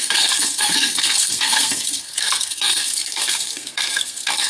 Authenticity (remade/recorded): remade